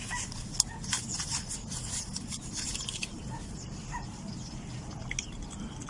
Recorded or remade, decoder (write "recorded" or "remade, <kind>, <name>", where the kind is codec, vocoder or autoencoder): recorded